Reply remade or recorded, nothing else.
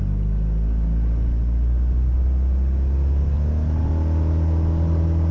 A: recorded